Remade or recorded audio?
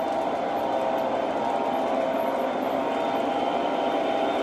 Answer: recorded